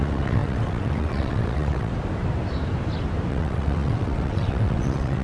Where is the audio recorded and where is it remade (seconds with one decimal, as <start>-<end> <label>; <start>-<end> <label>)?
0.0-1.9 remade; 1.9-3.3 recorded; 3.3-5.2 remade